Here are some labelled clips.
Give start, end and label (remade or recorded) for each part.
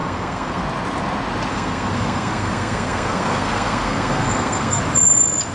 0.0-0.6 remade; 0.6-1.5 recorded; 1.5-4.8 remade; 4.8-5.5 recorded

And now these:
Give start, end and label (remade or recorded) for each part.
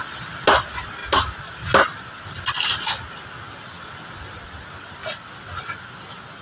0.0-6.4 recorded